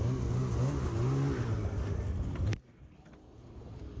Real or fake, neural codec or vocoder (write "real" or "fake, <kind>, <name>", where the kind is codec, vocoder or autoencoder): real